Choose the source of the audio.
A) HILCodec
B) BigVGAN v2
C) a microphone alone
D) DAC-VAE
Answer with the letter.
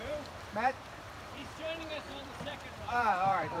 B